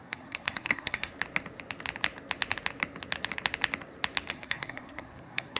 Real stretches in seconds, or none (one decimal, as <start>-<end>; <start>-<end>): 1.1-4.3